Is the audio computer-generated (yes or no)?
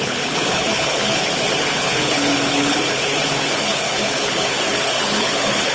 yes